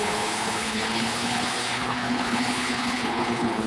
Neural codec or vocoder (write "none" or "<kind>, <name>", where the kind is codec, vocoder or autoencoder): codec, HILCodec